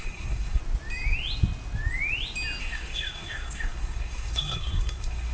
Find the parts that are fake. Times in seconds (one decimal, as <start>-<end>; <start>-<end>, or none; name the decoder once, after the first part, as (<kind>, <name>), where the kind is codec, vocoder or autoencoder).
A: 0.0-0.6 (codec, SNAC); 2.6-5.3